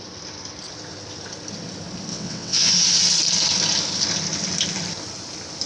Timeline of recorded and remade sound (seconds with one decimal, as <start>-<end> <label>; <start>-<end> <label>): 0.0-2.1 recorded; 2.1-2.7 remade; 2.7-5.7 recorded